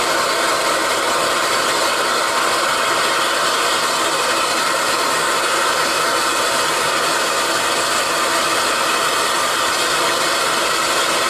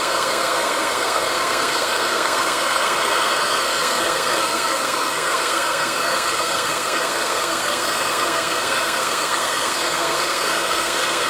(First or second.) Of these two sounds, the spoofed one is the second